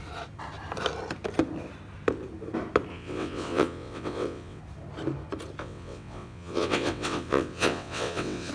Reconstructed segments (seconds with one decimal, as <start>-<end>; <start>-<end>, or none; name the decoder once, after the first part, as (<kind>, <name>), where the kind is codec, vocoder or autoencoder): 2.9-4.6 (vocoder, WaveNeXt); 5.6-8.5